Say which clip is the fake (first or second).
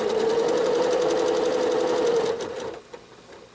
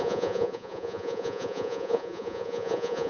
second